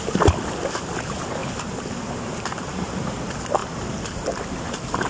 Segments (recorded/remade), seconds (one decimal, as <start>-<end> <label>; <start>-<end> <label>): 0.0-5.1 recorded